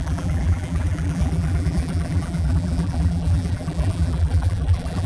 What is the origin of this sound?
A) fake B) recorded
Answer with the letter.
A